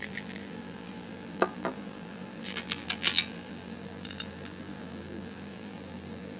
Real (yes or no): no